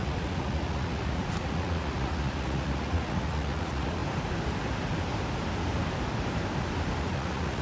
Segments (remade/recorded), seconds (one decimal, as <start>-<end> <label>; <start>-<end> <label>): 0.0-4.0 remade; 4.0-7.0 recorded; 7.0-7.6 remade